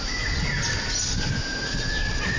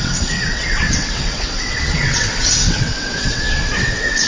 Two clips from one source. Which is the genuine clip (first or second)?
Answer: first